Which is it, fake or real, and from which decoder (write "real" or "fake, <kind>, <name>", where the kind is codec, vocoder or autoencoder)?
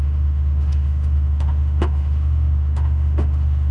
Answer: fake, autoencoder, DAC-VAE